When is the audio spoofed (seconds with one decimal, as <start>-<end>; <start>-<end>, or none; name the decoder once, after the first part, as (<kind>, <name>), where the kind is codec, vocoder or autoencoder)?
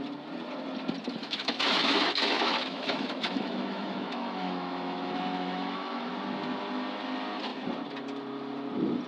1.2-6.1 (autoencoder, DAC-VAE)